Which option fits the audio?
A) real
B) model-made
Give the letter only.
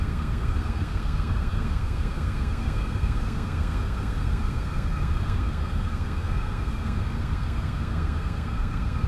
B